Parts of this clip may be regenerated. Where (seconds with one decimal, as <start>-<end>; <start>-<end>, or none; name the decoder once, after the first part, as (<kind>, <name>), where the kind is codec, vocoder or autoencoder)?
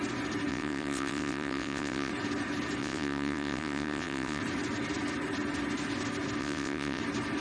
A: 0.5-2.1 (vocoder, WaveNeXt); 2.8-4.4; 6.4-7.0